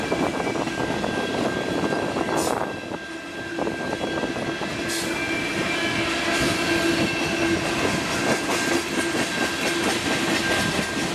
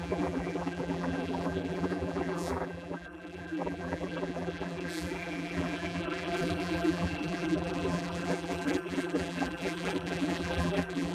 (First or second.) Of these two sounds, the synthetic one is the second